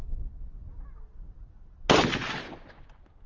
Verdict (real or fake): real